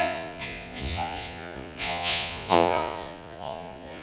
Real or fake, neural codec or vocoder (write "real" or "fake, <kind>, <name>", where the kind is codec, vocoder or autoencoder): fake, vocoder, Vocos